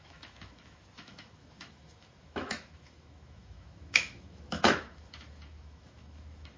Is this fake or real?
fake